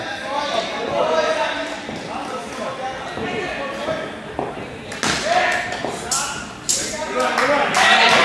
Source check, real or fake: real